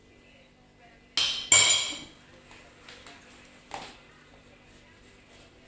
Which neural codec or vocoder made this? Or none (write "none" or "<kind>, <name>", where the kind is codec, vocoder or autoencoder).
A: none